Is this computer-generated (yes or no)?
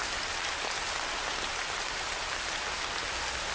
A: no